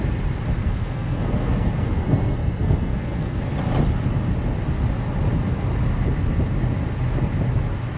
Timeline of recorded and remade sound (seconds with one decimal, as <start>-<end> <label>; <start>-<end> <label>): 0.0-0.6 recorded; 0.6-3.4 remade; 3.4-8.0 recorded